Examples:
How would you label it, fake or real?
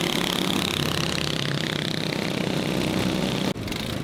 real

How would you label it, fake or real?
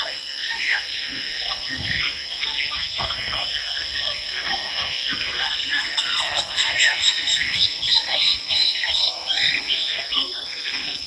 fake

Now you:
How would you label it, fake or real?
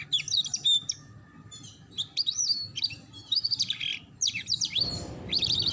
real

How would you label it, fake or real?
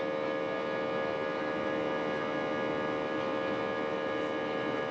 real